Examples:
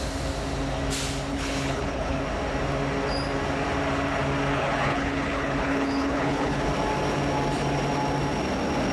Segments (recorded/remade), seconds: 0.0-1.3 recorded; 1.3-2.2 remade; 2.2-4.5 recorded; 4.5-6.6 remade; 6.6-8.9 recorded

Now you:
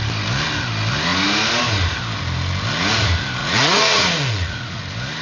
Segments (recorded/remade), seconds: 0.0-3.4 recorded; 3.4-4.8 remade; 4.8-5.2 recorded

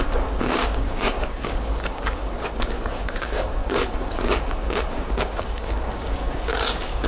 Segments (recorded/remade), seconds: 0.0-7.1 remade

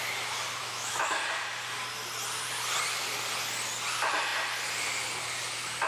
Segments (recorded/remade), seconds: 0.0-0.6 recorded; 0.6-1.2 remade; 1.2-5.9 recorded